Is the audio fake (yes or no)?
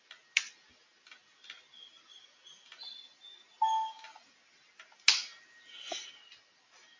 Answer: no